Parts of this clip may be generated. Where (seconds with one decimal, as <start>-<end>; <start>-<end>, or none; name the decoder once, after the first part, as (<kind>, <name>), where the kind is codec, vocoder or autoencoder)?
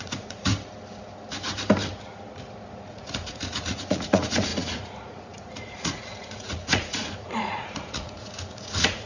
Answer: 0.0-0.5 (vocoder, Vocos); 2.9-9.1